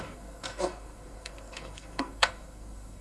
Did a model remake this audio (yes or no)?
yes